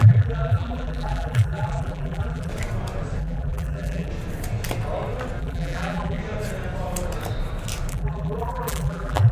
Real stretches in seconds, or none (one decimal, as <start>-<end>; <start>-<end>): 2.5-3.2; 4.1-5.4; 6.2-7.9